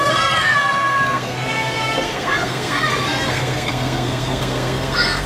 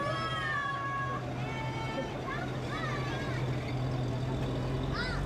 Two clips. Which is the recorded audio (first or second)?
second